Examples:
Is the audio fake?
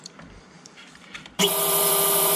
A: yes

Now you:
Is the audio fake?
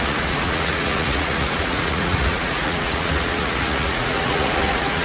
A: yes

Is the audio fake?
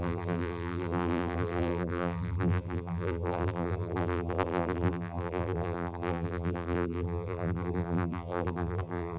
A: yes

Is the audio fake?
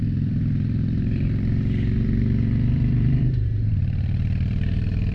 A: yes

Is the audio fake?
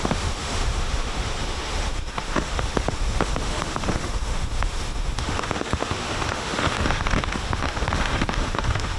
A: yes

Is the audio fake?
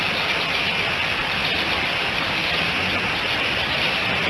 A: no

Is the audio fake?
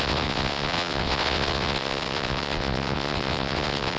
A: yes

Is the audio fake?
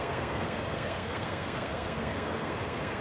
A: yes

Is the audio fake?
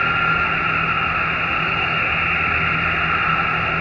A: no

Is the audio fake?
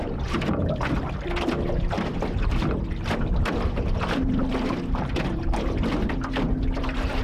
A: yes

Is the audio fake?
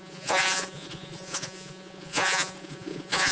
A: yes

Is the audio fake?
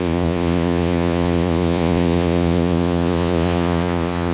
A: yes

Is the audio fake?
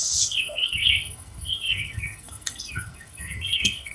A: yes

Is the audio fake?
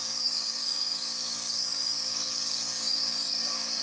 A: yes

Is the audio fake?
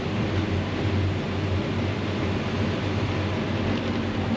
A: no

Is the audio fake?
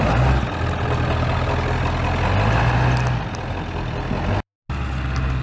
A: no